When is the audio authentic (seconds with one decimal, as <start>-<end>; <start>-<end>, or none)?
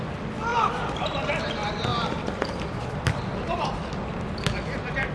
0.0-0.5; 1.4-1.9; 4.1-5.1